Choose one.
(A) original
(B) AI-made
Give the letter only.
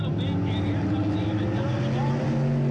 A